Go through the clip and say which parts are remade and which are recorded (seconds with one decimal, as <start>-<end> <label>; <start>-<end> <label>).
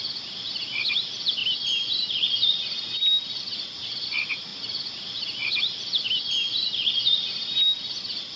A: 0.0-8.4 recorded